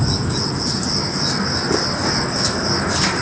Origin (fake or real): real